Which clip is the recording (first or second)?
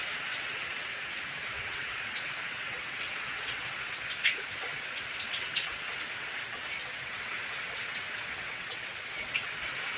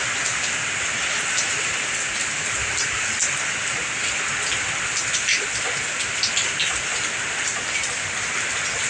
second